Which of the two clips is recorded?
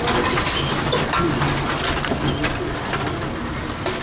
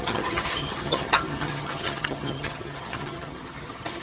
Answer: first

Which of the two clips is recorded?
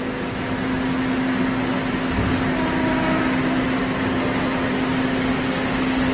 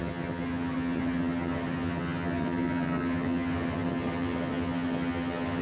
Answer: first